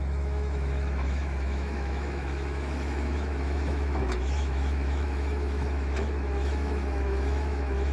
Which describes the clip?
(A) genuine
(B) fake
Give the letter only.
B